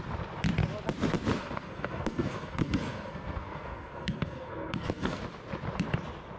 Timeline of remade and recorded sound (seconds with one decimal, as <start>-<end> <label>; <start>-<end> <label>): 0.0-1.4 recorded; 1.4-5.2 remade; 5.2-6.4 recorded